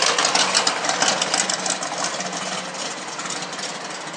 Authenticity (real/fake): real